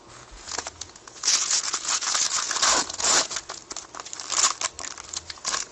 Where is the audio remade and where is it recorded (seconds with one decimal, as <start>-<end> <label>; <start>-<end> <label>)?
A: 0.0-3.6 remade; 3.6-5.1 recorded; 5.1-5.7 remade